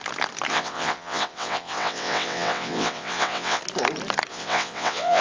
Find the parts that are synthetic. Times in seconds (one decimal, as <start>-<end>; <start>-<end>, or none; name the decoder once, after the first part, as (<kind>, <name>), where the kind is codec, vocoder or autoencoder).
0.5-3.6 (vocoder, WaveNeXt); 4.3-5.2